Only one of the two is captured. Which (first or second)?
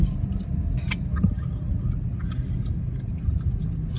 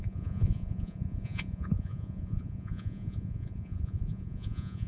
first